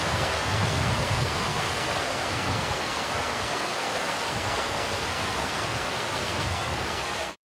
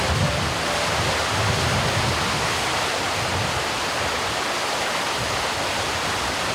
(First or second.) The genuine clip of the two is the second